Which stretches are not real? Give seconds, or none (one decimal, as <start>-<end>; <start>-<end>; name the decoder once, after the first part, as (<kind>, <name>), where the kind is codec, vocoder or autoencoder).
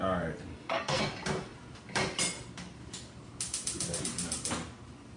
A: 0.5-1.0 (codec, SNAC)